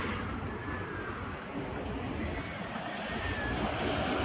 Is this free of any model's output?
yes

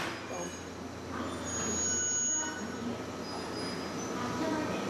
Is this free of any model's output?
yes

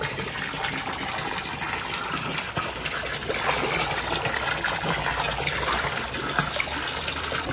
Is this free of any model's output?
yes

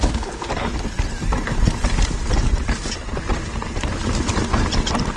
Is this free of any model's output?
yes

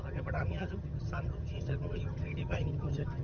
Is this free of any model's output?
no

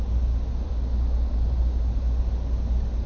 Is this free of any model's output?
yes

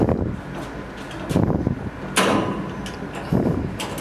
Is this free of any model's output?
yes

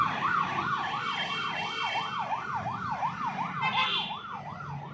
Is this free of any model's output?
yes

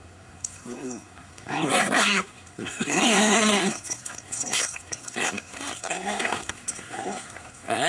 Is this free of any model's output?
no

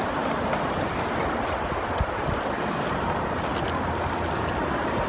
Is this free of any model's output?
yes